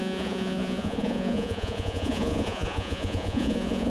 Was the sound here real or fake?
fake